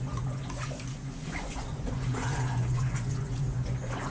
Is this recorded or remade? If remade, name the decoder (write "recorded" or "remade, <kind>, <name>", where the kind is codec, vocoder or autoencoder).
remade, vocoder, Vocos